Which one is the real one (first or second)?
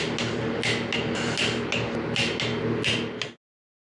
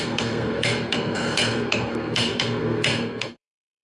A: first